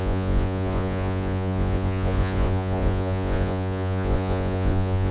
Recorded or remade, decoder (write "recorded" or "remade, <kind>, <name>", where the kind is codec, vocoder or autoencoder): remade, vocoder, Vocos